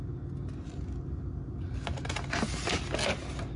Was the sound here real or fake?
real